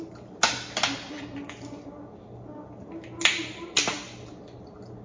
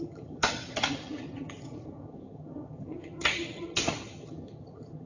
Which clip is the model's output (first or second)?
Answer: second